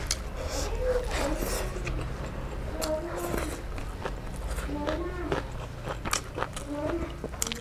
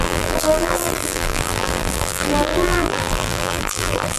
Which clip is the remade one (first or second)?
second